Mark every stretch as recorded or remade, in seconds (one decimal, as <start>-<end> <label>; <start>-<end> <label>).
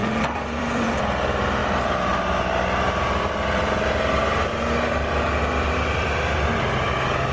0.0-1.0 remade; 1.0-7.3 recorded